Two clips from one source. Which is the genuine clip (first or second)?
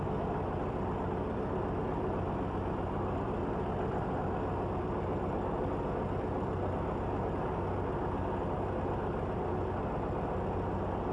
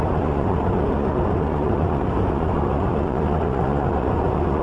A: first